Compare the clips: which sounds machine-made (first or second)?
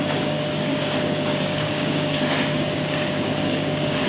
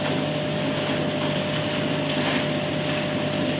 first